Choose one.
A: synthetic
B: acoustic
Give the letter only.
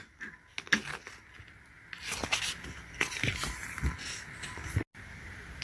B